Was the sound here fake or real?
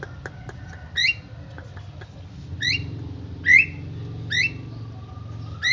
real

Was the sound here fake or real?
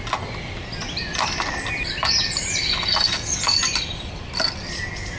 real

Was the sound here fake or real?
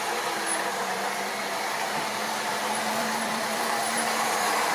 fake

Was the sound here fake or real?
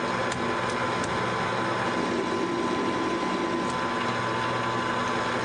real